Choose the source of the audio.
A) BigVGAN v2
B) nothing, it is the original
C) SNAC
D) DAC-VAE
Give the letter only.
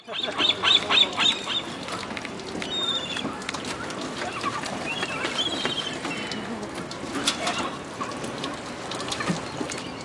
B